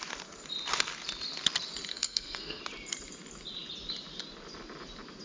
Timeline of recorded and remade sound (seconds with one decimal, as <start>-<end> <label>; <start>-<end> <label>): 0.0-1.9 recorded; 1.9-2.6 remade; 2.6-5.2 recorded